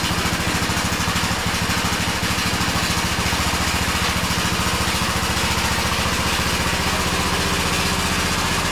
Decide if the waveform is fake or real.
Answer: real